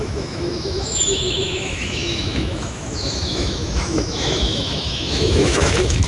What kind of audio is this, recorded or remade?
remade